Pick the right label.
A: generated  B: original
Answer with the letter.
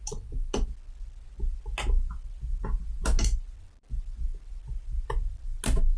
B